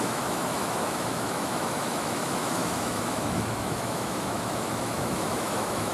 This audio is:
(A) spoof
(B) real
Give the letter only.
A